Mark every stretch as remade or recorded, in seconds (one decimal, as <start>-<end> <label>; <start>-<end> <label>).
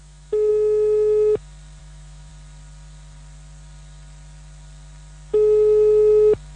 0.0-0.5 remade; 0.5-1.8 recorded; 1.8-2.3 remade; 2.3-6.6 recorded